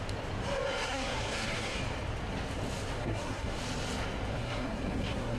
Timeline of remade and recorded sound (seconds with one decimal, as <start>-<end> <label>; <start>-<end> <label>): 0.0-0.9 recorded; 0.9-1.8 remade; 1.8-3.0 recorded; 3.0-3.6 remade; 3.6-4.3 recorded; 4.3-5.4 remade